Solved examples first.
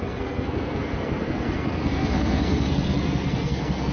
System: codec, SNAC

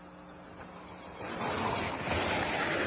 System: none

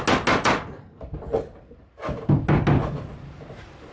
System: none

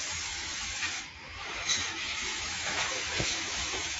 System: autoencoder, DAC-VAE